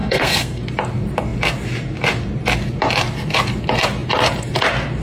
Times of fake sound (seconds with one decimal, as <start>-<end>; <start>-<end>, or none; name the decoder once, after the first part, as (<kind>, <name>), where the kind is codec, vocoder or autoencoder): 0.0-0.6 (codec, SNAC)